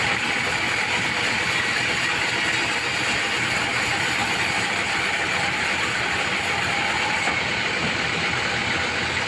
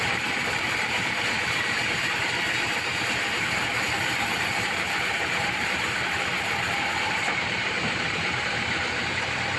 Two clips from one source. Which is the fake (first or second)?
second